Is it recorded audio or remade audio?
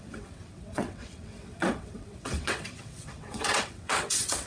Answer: remade